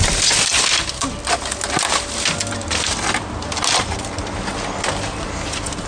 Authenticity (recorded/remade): recorded